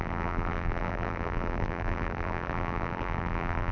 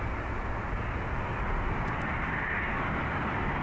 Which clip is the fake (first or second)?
first